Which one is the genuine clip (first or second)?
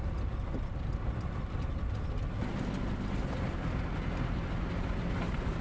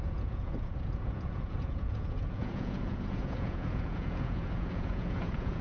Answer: first